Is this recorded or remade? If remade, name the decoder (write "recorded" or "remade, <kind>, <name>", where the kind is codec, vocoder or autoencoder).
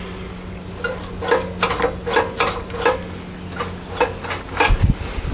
recorded